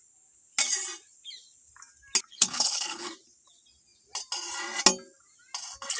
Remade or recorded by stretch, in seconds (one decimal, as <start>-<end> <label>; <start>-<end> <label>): 0.0-2.3 recorded; 2.3-3.1 remade; 3.1-6.0 recorded